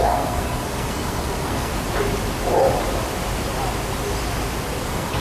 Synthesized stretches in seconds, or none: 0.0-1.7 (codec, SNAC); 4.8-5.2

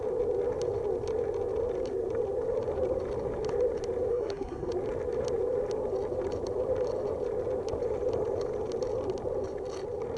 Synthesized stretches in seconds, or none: 4.1-4.7 (codec, SNAC)

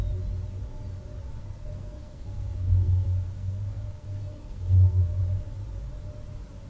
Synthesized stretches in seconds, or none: 1.4-5.2 (codec, SNAC)

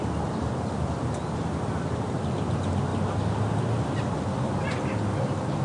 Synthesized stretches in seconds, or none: none